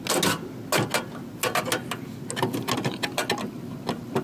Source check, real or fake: real